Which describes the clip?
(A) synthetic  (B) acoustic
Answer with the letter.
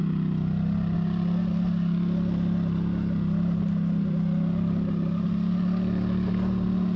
B